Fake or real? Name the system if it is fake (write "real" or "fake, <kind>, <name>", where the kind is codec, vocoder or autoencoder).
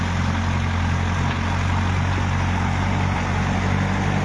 real